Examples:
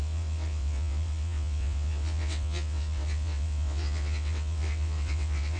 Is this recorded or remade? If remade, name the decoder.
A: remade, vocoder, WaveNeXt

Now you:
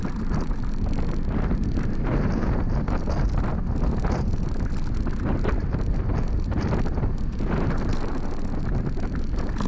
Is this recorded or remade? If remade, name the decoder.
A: recorded